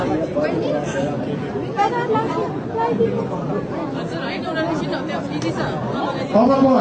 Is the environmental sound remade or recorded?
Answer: recorded